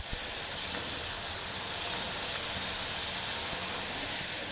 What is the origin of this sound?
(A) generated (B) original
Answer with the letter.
B